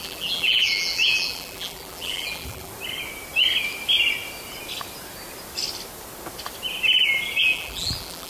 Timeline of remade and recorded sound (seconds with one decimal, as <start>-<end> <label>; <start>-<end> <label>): 0.0-2.7 remade; 2.7-7.4 recorded; 7.4-8.3 remade